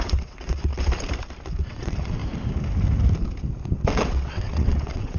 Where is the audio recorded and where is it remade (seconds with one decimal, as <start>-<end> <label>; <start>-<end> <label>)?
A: 0.0-0.7 remade; 0.7-1.6 recorded; 1.6-2.2 remade; 2.2-3.8 recorded; 3.8-5.2 remade